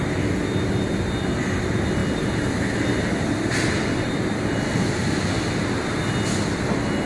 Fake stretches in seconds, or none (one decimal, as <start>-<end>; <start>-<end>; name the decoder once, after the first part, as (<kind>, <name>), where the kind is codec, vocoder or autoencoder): none

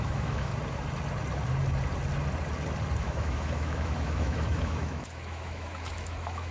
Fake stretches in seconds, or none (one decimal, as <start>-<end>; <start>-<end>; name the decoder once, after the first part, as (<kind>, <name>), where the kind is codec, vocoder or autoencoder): 0.0-0.5 (autoencoder, DAC-VAE); 3.0-6.5

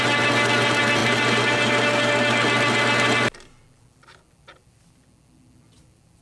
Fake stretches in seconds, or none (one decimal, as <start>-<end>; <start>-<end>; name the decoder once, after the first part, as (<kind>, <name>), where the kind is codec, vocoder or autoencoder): none

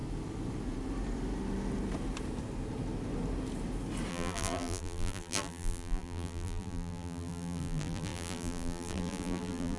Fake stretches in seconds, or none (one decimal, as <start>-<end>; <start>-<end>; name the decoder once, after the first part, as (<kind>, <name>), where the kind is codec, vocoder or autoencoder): 4.1-9.8 (vocoder, BigVGAN v2)

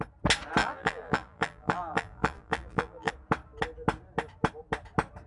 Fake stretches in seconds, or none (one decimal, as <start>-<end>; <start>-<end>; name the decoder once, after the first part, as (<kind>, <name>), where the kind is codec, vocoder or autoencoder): 0.6-3.1 (vocoder, BigVGAN v2)

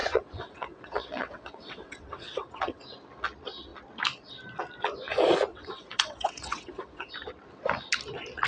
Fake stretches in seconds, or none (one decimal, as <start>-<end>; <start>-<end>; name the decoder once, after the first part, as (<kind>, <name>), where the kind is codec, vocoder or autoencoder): 0.0-2.8 (vocoder, WaveNeXt); 5.5-7.1